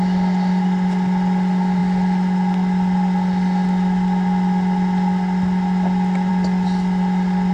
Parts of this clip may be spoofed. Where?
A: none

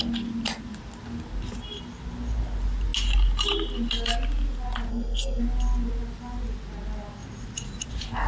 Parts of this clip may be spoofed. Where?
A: 4.9-5.4 (codec, SNAC)